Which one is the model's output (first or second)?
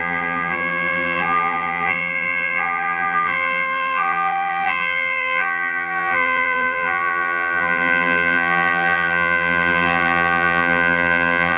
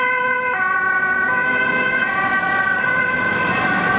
first